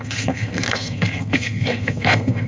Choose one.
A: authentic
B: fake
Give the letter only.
B